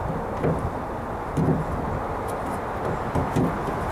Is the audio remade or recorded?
recorded